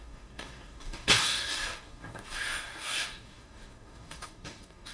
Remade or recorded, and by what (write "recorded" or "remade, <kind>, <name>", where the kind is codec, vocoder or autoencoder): remade, codec, DAC